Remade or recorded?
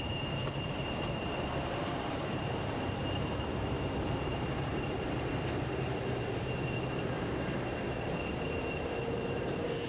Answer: remade